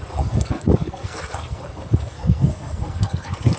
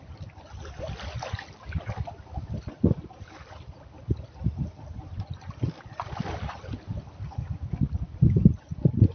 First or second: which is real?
second